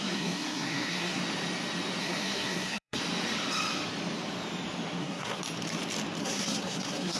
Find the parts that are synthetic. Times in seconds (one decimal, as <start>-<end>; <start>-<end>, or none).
0.0-1.2; 2.0-3.0; 5.0-5.4; 6.2-7.2